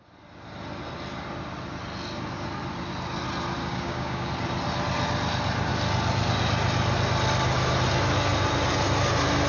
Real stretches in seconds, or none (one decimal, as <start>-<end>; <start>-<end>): 0.0-3.6; 4.3-9.5